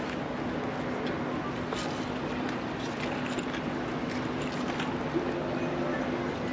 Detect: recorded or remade recorded